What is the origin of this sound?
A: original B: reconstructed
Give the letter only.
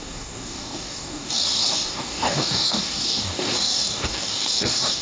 B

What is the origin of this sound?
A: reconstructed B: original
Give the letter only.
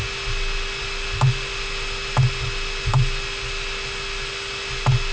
B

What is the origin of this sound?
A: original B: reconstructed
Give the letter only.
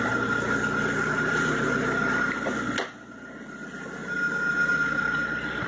A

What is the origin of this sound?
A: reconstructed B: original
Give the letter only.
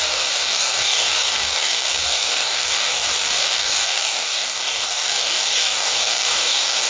A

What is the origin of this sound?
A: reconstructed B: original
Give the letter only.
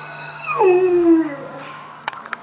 A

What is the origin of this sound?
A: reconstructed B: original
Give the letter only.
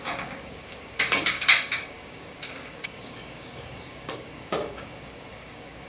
A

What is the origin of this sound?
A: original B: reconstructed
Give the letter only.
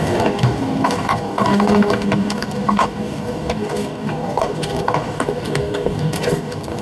B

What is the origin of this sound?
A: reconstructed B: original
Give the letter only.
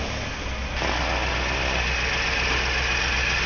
B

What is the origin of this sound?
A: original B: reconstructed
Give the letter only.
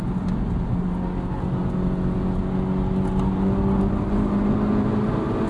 A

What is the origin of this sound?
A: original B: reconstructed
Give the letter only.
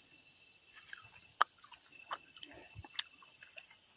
A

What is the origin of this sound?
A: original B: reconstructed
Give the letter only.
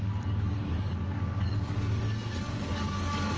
B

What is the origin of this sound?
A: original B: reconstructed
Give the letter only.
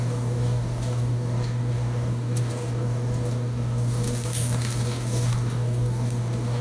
B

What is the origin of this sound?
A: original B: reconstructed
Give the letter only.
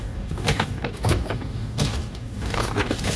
B